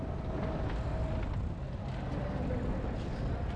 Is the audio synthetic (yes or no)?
no